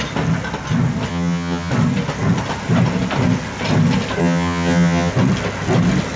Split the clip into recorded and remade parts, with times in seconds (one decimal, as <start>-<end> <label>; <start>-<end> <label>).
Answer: 0.0-1.1 recorded; 1.1-1.7 remade; 1.7-4.2 recorded; 4.2-5.1 remade; 5.1-6.2 recorded